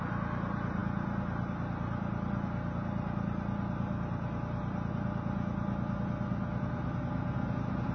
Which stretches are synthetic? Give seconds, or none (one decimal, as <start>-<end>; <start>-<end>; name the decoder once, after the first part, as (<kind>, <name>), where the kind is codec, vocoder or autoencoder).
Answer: none

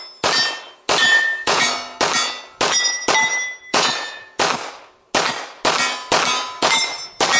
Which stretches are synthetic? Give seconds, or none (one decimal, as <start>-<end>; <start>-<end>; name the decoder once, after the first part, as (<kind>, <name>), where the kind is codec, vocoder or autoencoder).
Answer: 1.0-1.7 (vocoder, Vocos); 3.7-4.4

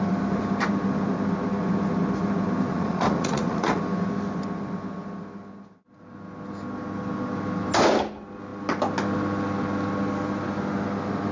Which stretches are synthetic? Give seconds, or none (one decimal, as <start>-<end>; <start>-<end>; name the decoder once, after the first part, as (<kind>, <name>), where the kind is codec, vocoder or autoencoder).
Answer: 2.7-3.8 (vocoder, Vocos)

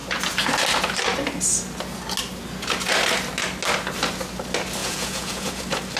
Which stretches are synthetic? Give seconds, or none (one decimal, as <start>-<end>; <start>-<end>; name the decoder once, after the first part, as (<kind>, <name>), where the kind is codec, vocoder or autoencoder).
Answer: 4.8-5.6 (vocoder, Vocos)

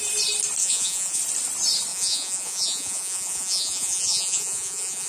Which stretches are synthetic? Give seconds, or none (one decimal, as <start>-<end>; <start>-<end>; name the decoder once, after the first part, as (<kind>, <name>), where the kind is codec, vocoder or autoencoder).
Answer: 0.6-1.2 (vocoder, Vocos); 1.9-5.1

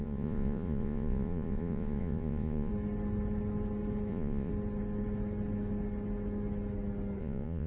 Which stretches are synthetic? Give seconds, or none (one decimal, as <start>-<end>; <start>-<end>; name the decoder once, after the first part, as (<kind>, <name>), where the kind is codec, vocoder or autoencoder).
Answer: 0.0-2.7 (vocoder, Vocos); 4.1-4.5; 7.2-7.7

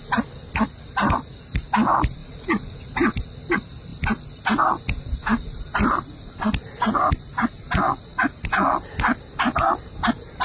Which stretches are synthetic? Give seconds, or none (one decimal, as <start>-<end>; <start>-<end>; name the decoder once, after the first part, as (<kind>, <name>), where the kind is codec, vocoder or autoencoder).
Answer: 2.2-2.8 (vocoder, Vocos)

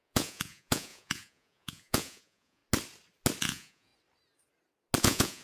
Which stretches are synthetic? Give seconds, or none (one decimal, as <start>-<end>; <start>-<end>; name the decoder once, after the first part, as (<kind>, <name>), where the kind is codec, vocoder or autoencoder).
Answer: 0.0-2.6 (vocoder, Vocos); 3.4-3.9; 5.0-5.4